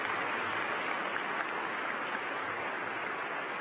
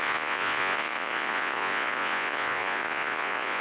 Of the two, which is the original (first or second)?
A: first